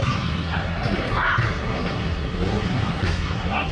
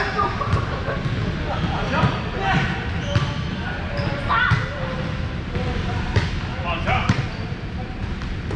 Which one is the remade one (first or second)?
first